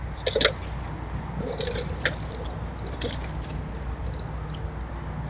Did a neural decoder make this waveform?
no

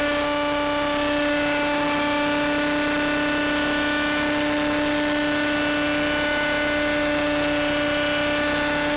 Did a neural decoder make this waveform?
no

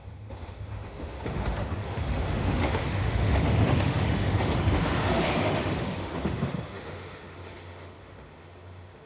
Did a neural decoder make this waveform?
yes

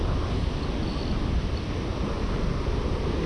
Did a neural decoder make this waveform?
no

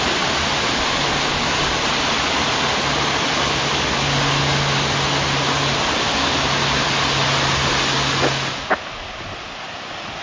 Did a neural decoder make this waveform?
no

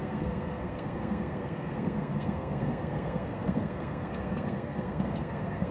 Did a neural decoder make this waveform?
yes